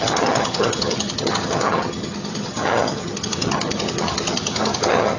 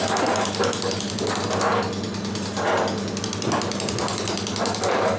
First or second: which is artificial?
first